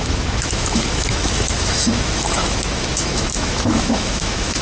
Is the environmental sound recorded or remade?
remade